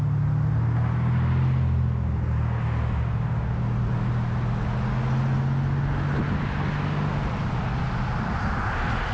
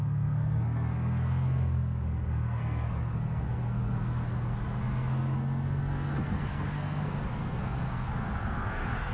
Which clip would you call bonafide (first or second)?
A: first